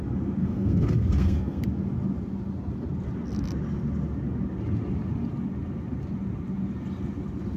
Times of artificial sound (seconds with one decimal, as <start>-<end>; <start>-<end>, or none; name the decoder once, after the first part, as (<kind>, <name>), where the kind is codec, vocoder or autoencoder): 0.4-1.6 (codec, SNAC)